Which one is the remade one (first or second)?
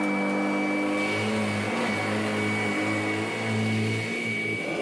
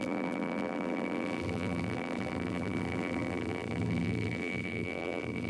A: second